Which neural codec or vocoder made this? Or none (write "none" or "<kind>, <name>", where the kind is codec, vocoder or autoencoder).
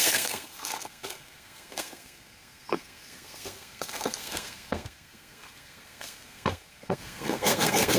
codec, SNAC